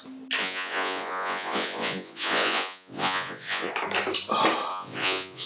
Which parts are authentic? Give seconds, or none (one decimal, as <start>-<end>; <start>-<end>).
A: 0.0-0.4; 3.7-4.7

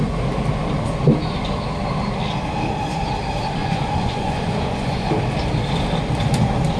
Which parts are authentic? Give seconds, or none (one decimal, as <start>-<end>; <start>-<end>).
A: 0.0-3.6; 5.1-6.8